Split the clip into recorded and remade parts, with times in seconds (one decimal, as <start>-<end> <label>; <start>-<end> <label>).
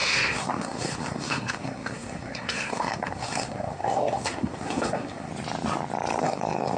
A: 0.0-5.3 remade; 5.3-6.2 recorded; 6.2-6.8 remade